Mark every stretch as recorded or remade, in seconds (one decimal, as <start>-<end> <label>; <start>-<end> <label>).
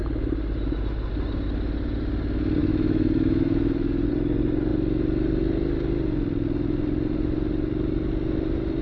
0.0-2.6 recorded; 2.6-4.1 remade; 4.1-8.8 recorded